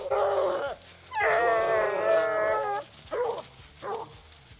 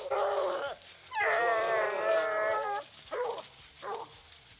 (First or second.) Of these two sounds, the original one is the first